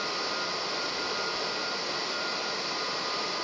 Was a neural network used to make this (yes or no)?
no